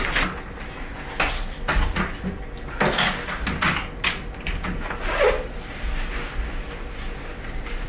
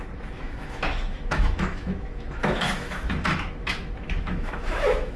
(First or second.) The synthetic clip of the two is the second